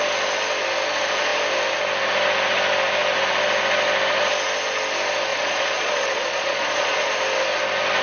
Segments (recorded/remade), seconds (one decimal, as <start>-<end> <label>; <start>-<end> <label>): 0.0-5.3 recorded; 5.3-7.1 remade; 7.1-8.0 recorded